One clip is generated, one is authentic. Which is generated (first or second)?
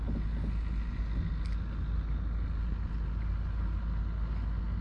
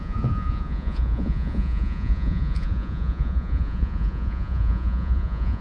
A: second